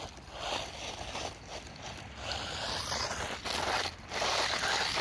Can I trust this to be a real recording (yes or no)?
yes